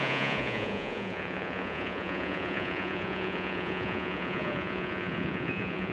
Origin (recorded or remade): remade